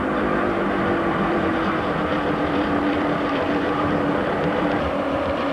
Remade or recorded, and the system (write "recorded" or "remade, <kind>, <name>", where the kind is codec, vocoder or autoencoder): remade, vocoder, BigVGAN v2